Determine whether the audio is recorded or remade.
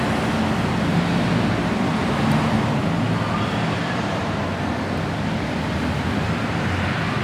remade